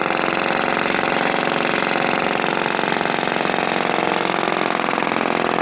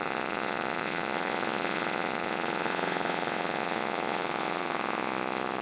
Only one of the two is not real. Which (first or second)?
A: second